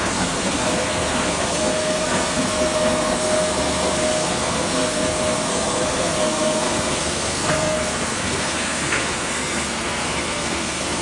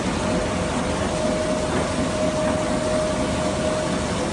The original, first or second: second